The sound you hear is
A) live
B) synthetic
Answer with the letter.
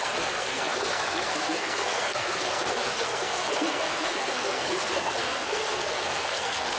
B